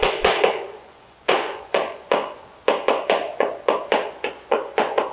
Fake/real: fake